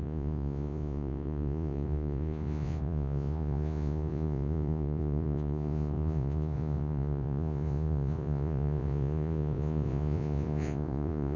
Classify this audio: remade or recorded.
remade